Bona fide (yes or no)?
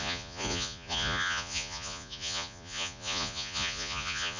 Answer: no